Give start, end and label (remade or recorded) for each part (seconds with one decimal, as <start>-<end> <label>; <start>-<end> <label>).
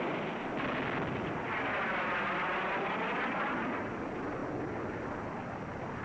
0.0-6.0 recorded